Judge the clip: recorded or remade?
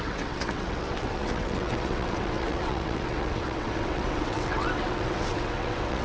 remade